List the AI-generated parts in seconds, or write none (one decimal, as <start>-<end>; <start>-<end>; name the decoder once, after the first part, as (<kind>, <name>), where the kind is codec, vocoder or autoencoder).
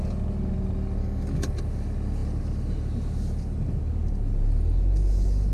1.0-1.5 (codec, DAC)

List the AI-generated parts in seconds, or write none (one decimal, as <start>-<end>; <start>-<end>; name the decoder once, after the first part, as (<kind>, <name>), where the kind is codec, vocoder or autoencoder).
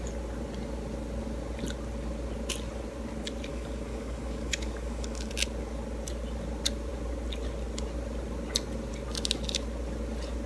3.5-5.3 (codec, DAC)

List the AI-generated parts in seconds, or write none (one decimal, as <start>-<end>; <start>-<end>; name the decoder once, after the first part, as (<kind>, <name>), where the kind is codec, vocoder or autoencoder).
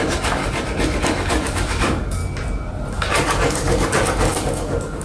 0.0-0.4 (codec, DAC); 1.0-2.2; 2.9-5.0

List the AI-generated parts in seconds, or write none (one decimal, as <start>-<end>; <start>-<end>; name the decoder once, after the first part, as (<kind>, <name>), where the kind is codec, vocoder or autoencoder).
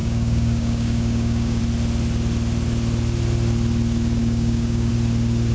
0.0-1.6 (codec, DAC); 4.2-4.9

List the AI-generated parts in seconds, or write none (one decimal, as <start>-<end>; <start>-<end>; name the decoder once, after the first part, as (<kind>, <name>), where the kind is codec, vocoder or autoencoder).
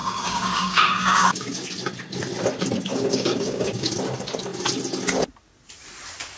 0.0-1.5 (codec, DAC); 2.9-3.9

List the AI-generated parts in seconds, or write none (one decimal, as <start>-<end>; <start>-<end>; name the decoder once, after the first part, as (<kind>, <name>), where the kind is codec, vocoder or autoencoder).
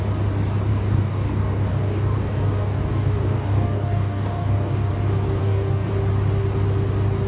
0.7-4.9 (codec, DAC); 5.4-5.9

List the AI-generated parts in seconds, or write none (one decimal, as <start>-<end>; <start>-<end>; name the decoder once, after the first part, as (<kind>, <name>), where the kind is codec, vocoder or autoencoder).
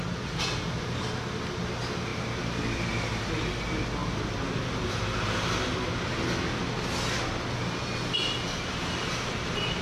none